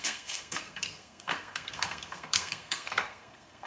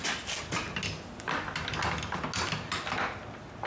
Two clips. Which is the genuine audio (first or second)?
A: second